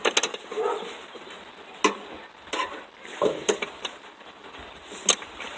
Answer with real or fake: real